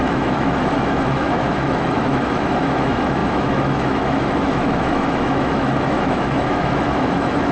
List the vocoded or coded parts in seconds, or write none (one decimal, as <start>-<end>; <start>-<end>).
0.0-7.5